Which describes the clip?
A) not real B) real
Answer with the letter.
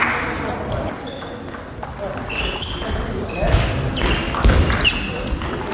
B